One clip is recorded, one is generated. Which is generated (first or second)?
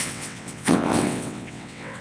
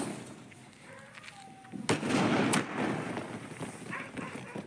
first